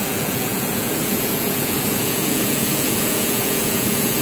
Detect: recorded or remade remade